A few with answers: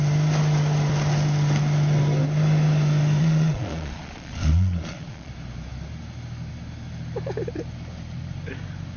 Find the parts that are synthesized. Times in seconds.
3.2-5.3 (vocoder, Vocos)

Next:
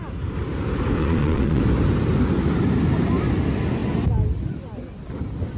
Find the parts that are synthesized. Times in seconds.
1.0-1.6 (vocoder, Vocos)

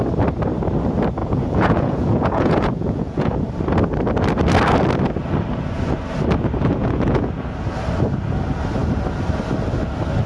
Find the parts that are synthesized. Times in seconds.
1.2-3.3 (vocoder, Vocos); 6.8-7.3

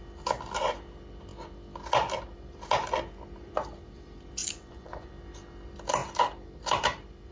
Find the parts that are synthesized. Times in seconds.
4.4-5.1 (vocoder, Vocos)

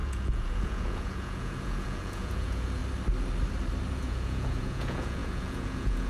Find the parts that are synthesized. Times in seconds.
0.0-2.8 (vocoder, Vocos); 3.9-6.1